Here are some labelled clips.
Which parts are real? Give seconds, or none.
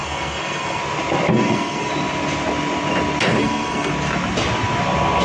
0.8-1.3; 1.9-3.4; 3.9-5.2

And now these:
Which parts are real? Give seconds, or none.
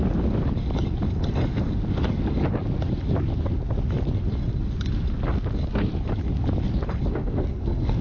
0.0-7.1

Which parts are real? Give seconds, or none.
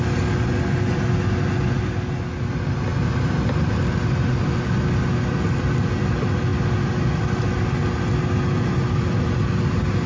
0.0-10.1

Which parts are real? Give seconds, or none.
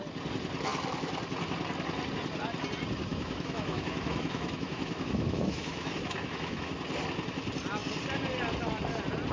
0.0-3.1; 6.7-9.3